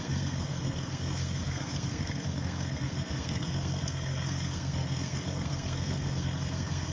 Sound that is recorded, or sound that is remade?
remade